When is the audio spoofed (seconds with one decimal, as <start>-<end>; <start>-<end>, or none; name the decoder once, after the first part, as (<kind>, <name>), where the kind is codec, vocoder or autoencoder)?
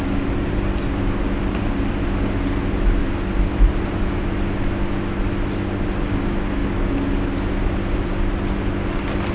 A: 3.0-4.3 (vocoder, BigVGAN v2)